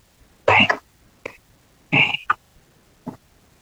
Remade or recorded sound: recorded